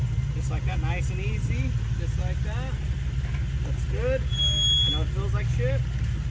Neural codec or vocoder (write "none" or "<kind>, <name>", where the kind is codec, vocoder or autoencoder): none